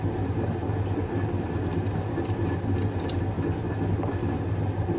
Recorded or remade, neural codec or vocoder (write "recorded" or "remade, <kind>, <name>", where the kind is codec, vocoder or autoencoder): recorded